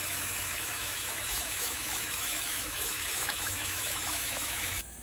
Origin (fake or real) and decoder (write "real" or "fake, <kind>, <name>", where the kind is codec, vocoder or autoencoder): fake, autoencoder, DAC-VAE